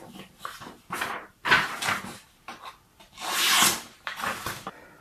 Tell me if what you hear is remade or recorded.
recorded